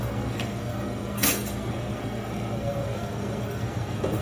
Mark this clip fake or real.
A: fake